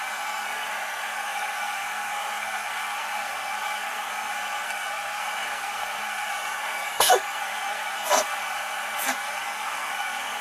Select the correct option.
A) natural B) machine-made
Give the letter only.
B